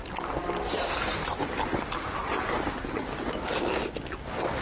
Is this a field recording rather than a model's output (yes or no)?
yes